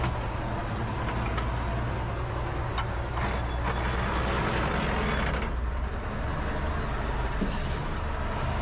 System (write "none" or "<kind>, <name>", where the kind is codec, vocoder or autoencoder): none